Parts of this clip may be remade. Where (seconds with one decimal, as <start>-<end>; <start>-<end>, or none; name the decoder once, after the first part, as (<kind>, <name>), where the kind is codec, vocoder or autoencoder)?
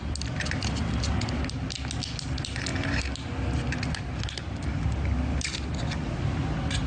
none